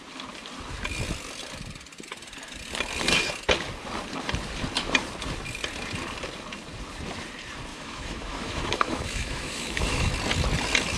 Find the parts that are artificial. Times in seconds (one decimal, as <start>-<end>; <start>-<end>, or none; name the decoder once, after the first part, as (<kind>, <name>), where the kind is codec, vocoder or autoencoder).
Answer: 7.7-10.1 (autoencoder, DAC-VAE)